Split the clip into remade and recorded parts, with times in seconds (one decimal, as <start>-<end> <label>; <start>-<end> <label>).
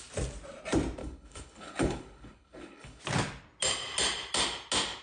0.0-1.0 recorded; 1.0-3.0 remade; 3.0-5.0 recorded